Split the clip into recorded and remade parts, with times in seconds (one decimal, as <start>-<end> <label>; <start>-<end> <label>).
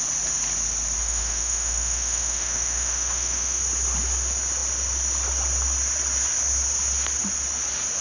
0.0-1.0 recorded; 1.0-3.6 remade; 3.6-8.0 recorded